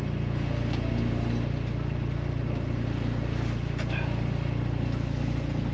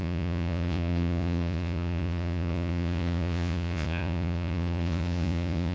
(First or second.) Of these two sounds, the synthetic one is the second